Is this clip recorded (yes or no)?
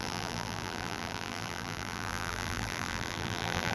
no